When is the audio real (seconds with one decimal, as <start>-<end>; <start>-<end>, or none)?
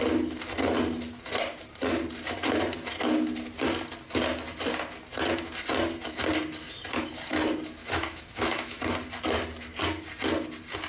0.0-7.8; 8.8-10.9